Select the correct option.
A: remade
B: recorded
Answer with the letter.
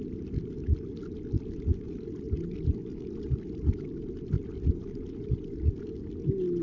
B